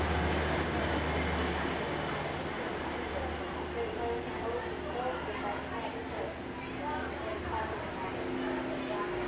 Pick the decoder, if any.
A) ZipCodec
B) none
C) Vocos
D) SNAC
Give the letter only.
B